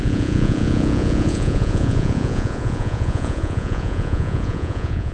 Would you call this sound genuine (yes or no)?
no